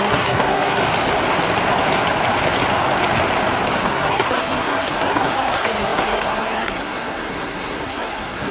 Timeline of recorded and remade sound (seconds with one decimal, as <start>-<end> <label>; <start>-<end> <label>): 0.0-0.8 remade; 0.8-3.8 recorded; 3.8-8.5 remade